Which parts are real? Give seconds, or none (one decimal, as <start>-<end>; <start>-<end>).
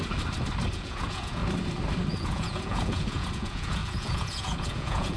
0.0-0.7; 1.4-2.1